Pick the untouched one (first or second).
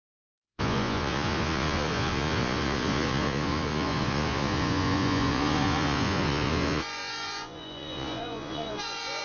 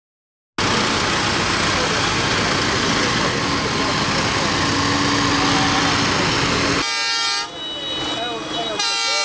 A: second